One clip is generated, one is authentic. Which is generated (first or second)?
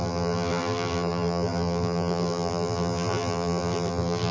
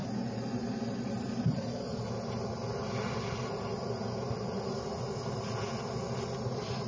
first